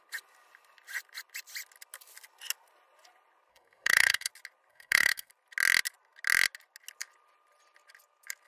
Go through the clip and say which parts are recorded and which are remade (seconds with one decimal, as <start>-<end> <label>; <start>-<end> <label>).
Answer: 0.0-3.5 recorded; 3.5-4.3 remade; 4.3-4.7 recorded; 4.7-5.3 remade; 5.3-8.5 recorded